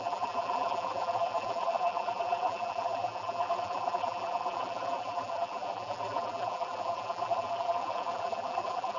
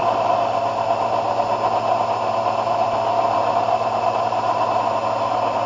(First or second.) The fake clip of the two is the first